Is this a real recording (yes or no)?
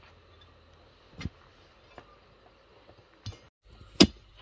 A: yes